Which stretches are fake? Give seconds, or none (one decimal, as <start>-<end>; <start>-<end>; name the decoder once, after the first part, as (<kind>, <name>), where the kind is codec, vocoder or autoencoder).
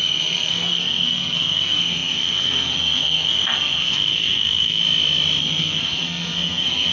0.0-4.8 (codec, SNAC); 5.4-6.9